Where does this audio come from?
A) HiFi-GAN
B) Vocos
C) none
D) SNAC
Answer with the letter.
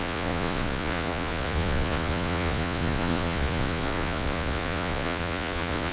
B